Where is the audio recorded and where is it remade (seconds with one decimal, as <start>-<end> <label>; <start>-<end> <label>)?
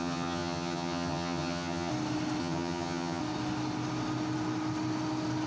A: 0.0-1.9 remade; 1.9-2.4 recorded; 2.4-3.2 remade; 3.2-5.5 recorded